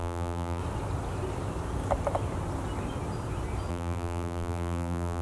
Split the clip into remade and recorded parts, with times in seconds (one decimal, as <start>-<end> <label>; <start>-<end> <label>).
0.0-0.6 remade; 0.6-3.7 recorded; 3.7-5.2 remade